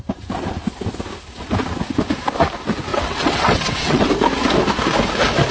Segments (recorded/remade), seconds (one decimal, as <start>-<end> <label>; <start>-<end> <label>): 0.0-2.9 recorded; 2.9-4.1 remade; 4.1-5.5 recorded

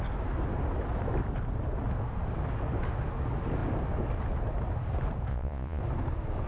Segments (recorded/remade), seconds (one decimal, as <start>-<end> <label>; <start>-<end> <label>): 0.0-5.3 recorded; 5.3-5.8 remade; 5.8-6.5 recorded

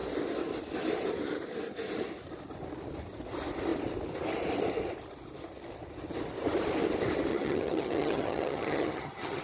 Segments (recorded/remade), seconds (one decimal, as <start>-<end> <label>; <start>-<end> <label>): 0.0-7.3 recorded; 7.3-9.4 remade

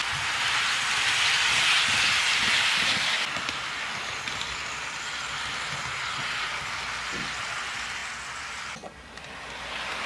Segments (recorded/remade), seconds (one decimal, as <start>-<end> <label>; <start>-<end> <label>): 0.0-10.1 recorded